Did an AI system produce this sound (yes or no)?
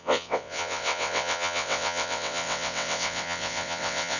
yes